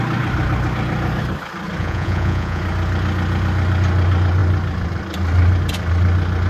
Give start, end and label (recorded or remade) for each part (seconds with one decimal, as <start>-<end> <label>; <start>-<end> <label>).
0.0-1.8 recorded; 1.8-2.6 remade; 2.6-6.5 recorded